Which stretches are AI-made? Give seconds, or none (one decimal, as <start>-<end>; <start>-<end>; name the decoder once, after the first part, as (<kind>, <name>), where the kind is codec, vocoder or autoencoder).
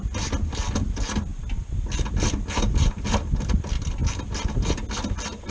none